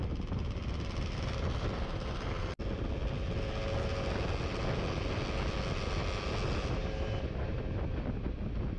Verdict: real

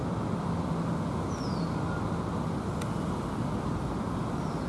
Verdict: real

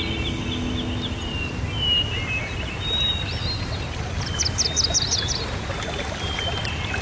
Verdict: real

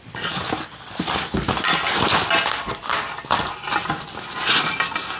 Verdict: real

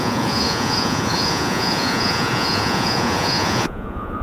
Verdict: fake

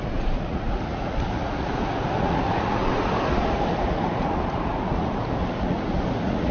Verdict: fake